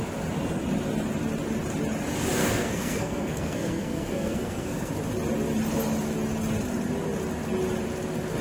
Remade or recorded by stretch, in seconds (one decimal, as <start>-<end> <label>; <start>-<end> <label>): 0.0-2.4 recorded; 2.4-4.9 remade; 4.9-8.4 recorded